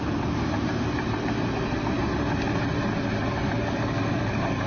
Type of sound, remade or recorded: remade